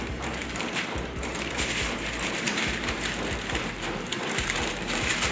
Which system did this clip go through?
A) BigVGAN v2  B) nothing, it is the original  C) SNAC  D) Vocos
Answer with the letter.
A